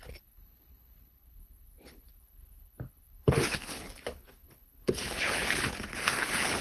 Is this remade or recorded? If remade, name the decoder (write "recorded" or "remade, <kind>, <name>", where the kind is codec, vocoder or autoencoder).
remade, codec, HILCodec